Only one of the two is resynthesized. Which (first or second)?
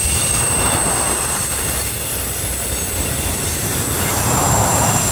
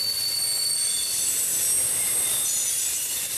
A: first